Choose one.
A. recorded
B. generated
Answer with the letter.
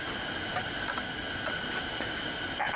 A